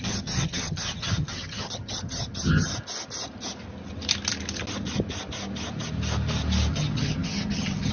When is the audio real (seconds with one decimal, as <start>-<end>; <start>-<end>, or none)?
2.7-6.7